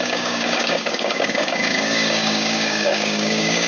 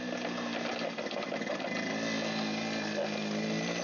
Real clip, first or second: second